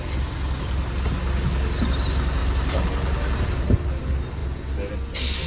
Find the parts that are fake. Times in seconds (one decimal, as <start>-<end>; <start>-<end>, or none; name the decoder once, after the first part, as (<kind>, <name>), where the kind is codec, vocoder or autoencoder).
2.4-4.0 (vocoder, BigVGAN v2)